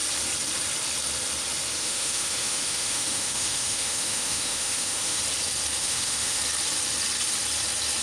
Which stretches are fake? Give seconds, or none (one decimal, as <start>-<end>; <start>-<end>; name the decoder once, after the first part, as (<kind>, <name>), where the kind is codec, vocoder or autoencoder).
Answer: 1.8-5.2 (autoencoder, DAC-VAE); 5.8-6.4